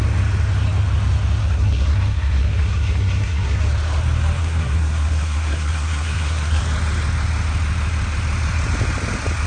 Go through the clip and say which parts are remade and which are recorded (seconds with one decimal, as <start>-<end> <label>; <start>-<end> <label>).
0.0-1.4 recorded; 1.4-3.6 remade; 3.6-4.4 recorded; 4.4-6.6 remade; 6.6-9.5 recorded